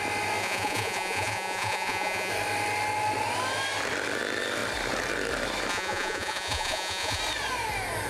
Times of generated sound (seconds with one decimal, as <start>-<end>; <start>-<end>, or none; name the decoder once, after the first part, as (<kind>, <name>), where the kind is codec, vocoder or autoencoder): 0.4-2.3 (vocoder, Vocos); 5.7-7.2